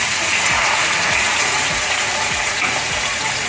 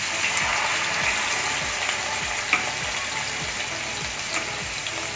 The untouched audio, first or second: second